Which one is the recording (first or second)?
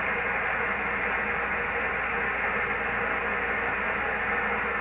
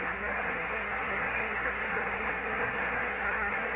first